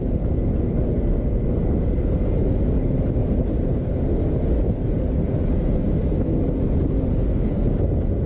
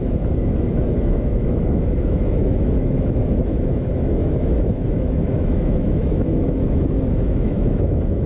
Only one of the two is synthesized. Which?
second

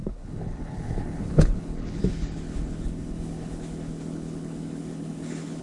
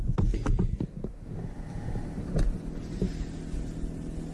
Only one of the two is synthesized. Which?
first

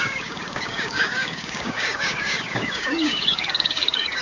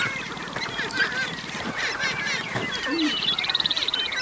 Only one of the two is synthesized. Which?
first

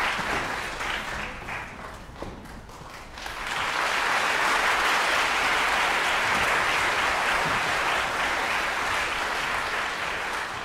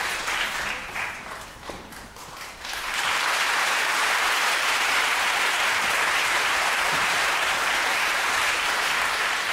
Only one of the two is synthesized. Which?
second